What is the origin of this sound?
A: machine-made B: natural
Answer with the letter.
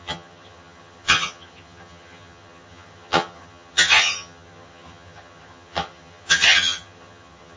A